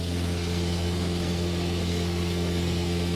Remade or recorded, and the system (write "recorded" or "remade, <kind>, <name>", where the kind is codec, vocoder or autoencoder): remade, codec, SNAC